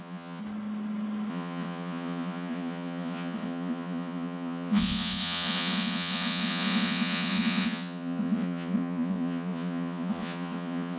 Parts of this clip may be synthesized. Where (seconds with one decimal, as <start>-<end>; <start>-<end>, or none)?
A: 0.0-0.4; 1.3-11.0